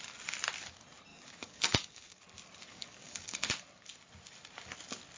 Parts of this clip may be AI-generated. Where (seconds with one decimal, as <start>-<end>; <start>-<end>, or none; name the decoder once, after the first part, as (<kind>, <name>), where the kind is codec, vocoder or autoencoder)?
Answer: 1.1-2.2 (codec, DAC); 2.7-3.5